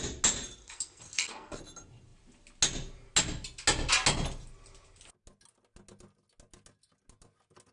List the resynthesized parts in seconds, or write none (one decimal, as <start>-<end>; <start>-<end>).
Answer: 0.6-1.6